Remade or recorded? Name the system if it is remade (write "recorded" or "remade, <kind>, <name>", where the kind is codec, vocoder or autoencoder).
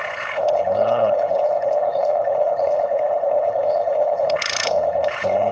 remade, codec, HILCodec